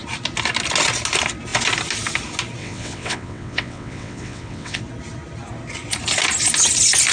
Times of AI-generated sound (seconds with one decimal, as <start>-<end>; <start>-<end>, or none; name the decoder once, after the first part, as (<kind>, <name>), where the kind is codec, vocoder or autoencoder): 2.6-4.8 (vocoder, WaveNeXt)